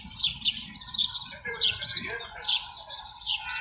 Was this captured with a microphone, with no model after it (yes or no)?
no